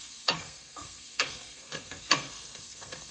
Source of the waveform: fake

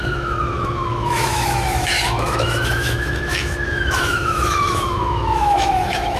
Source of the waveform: fake